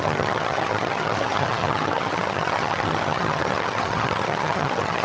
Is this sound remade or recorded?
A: remade